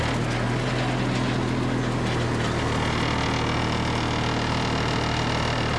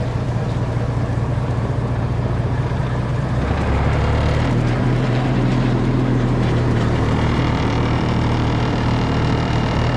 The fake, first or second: second